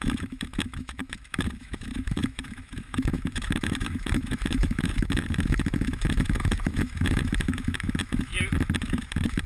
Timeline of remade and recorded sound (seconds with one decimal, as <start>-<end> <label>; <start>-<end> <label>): 0.0-8.3 remade; 8.3-8.8 recorded; 8.8-9.5 remade